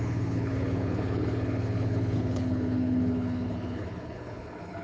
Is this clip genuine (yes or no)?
no